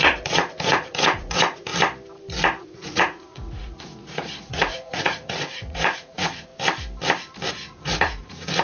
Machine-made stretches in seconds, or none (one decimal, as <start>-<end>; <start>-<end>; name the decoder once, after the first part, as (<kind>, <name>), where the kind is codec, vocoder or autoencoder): 0.0-1.7 (vocoder, Vocos); 2.6-6.5; 7.5-8.6